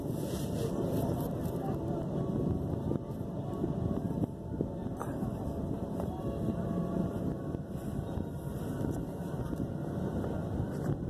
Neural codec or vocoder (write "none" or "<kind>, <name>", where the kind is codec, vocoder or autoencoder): vocoder, BigVGAN v2